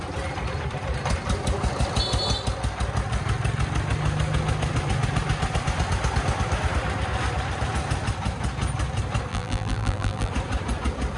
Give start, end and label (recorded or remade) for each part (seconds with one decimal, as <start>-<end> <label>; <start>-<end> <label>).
0.0-9.3 recorded; 9.3-10.3 remade; 10.3-11.2 recorded